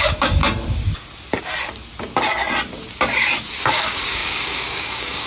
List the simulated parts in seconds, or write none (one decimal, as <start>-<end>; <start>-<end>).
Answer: 0.0-0.4; 3.6-5.3